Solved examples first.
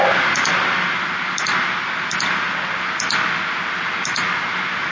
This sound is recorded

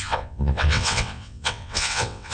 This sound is remade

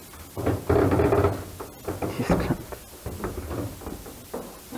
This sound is recorded